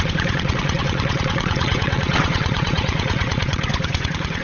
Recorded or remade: remade